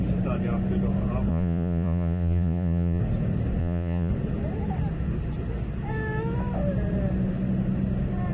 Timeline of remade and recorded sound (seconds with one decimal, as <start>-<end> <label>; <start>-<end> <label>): 0.0-1.3 recorded; 1.3-3.0 remade; 3.0-3.6 recorded; 3.6-4.1 remade; 4.1-8.3 recorded